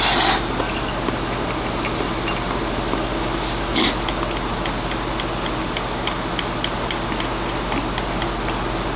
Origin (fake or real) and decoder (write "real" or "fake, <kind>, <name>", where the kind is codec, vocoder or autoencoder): real